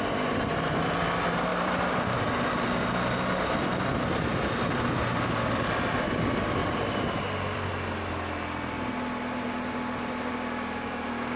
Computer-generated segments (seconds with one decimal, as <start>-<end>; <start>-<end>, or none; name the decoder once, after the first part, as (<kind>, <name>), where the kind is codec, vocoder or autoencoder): 1.5-2.2 (vocoder, BigVGAN v2); 6.6-7.7